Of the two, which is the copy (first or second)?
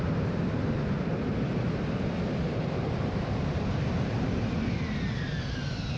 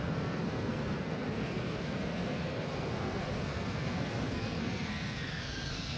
second